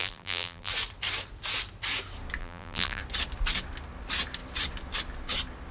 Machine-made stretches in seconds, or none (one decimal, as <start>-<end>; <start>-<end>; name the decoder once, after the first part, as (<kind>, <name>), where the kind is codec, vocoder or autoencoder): 0.0-0.7 (vocoder, BigVGAN v2); 2.4-3.0